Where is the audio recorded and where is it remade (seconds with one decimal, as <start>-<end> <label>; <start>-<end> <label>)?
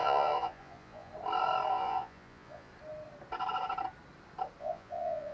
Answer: 0.0-1.1 remade; 1.1-1.7 recorded; 1.7-2.7 remade; 2.7-4.6 recorded; 4.6-5.3 remade